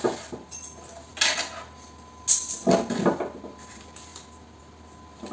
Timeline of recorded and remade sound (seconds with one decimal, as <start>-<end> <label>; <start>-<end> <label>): 0.0-5.3 recorded